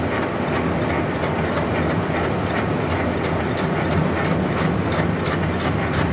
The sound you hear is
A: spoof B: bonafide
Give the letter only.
B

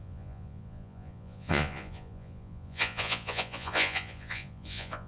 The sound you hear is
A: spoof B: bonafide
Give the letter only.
A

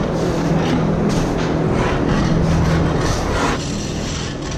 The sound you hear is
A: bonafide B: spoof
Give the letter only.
A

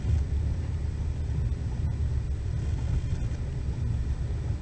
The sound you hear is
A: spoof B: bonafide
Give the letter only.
B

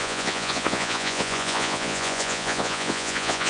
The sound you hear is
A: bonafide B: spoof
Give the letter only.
B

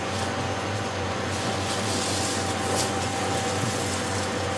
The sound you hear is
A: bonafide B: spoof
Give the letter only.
B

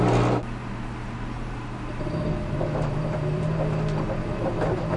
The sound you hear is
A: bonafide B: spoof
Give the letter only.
A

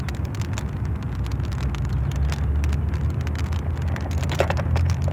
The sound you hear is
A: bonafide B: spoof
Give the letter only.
A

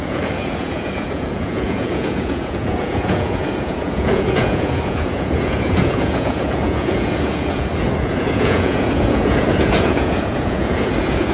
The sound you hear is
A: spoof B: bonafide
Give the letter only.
A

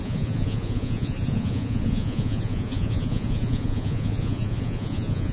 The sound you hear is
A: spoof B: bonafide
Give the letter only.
A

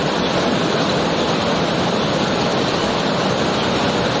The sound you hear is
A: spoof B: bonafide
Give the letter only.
B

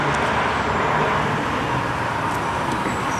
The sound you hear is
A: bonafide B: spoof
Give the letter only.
A